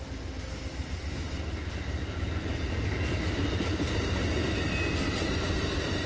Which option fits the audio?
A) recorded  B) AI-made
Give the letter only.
A